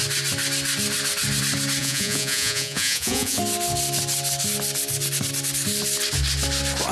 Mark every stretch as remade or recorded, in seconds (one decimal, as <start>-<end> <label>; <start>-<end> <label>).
0.0-1.8 recorded; 1.8-3.4 remade; 3.4-6.9 recorded